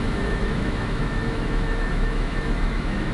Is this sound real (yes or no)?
no